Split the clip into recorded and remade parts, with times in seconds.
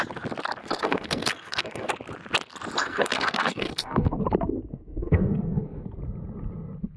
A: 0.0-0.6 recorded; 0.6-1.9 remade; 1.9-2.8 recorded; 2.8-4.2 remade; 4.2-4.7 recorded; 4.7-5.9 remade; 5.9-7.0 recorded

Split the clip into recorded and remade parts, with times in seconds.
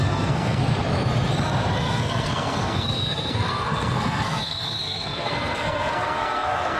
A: 0.0-0.6 remade; 0.6-1.9 recorded; 1.9-6.8 remade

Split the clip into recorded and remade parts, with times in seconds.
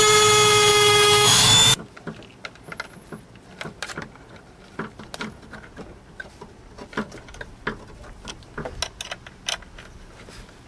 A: 0.0-0.7 recorded; 0.7-1.8 remade; 1.8-10.7 recorded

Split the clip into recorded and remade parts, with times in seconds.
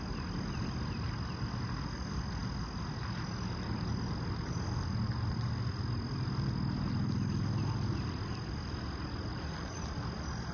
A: 0.0-10.5 recorded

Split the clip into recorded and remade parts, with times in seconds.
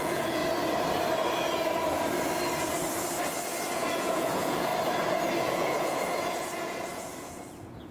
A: 0.0-0.4 remade; 0.4-3.7 recorded; 3.7-4.7 remade; 4.7-5.4 recorded; 5.4-7.9 remade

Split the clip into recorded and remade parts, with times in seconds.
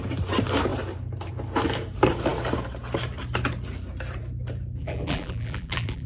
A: 0.0-4.8 recorded; 4.8-6.1 remade